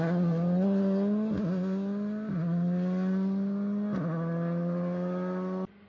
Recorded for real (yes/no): yes